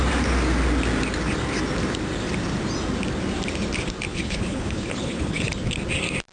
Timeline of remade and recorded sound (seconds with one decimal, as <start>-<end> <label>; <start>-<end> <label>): 0.0-4.1 recorded; 4.1-5.4 remade; 5.4-6.3 recorded